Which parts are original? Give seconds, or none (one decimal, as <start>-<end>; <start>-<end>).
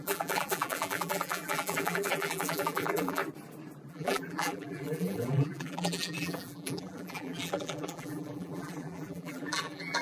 3.2-3.9